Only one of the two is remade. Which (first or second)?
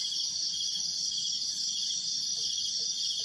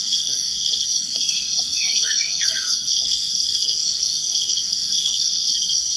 second